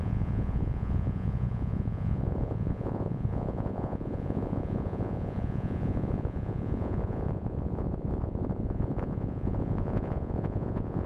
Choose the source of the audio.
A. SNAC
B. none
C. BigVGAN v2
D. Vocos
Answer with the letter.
D